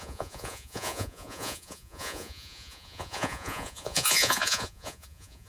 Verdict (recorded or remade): remade